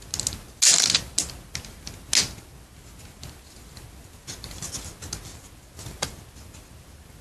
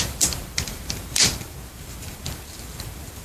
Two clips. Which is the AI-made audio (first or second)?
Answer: second